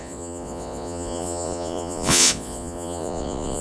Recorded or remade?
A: remade